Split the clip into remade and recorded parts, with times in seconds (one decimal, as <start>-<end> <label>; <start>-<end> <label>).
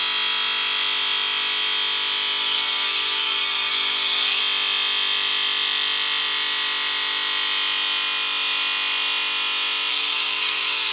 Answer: 0.0-2.4 recorded; 2.4-4.4 remade; 4.4-9.9 recorded; 9.9-10.9 remade